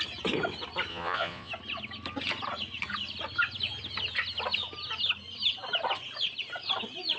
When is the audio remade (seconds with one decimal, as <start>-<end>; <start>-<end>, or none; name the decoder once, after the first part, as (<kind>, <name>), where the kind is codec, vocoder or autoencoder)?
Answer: 0.9-1.5 (vocoder, Vocos)